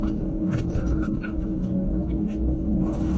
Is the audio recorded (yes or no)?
no